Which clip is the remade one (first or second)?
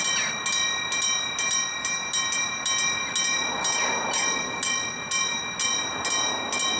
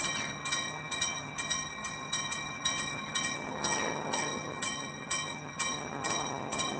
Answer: second